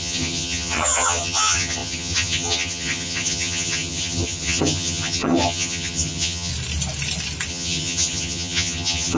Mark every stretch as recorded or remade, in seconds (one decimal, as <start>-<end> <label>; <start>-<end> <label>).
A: 0.0-6.5 remade; 6.5-7.5 recorded; 7.5-9.2 remade